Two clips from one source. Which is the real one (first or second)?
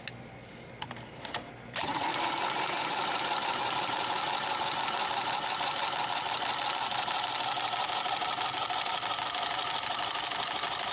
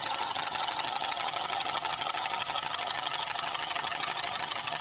first